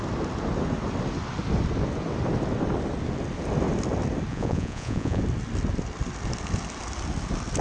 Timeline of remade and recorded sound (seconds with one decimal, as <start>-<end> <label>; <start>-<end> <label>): 0.0-4.3 recorded; 4.3-5.2 remade; 5.2-7.6 recorded